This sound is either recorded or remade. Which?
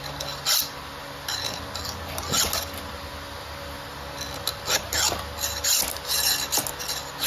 recorded